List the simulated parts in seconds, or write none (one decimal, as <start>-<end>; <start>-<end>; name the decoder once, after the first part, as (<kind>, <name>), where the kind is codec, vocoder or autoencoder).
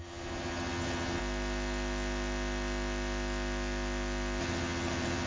0.0-1.2 (vocoder, HiFi-GAN); 4.4-5.3